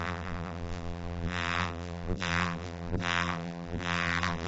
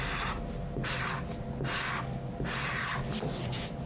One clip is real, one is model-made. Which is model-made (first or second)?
first